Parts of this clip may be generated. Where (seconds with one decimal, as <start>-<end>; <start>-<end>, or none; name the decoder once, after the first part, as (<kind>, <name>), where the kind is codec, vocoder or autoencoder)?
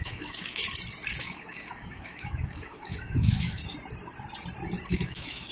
0.0-0.6 (autoencoder, DAC-VAE); 1.2-3.6; 4.9-5.5